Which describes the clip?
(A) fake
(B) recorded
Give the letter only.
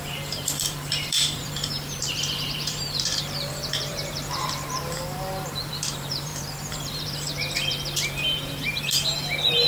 A